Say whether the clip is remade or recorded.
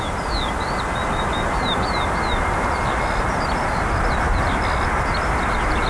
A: recorded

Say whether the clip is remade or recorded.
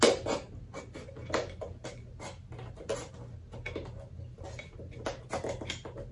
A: recorded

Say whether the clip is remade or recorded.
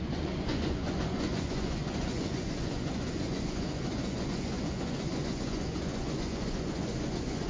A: remade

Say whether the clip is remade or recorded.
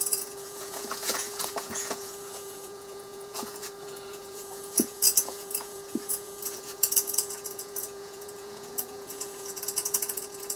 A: remade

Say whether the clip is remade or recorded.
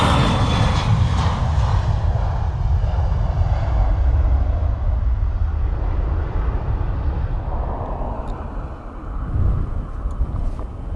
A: recorded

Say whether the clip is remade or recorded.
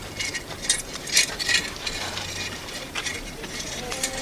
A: remade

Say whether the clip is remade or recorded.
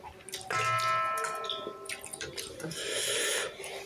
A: recorded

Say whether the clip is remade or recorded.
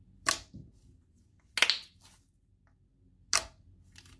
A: recorded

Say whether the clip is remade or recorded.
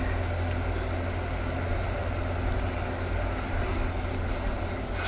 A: recorded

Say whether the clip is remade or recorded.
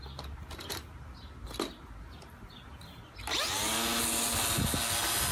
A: recorded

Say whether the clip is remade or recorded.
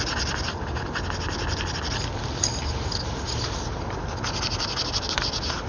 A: remade